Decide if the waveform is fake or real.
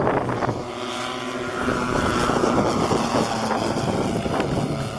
real